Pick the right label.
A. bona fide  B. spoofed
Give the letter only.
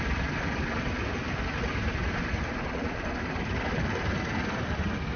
A